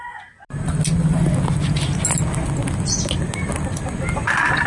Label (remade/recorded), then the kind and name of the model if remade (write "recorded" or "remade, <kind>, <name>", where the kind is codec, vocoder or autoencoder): recorded